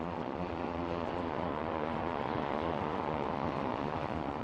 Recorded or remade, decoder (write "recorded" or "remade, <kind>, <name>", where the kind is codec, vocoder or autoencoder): remade, vocoder, Vocos